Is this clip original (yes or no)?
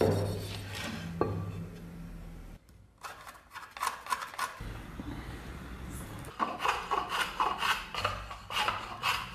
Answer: yes